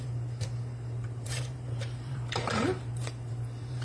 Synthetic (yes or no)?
yes